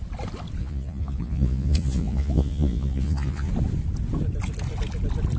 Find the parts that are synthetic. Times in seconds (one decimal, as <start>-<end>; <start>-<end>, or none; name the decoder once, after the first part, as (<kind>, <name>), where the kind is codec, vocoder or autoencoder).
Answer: 0.6-3.5 (vocoder, Vocos)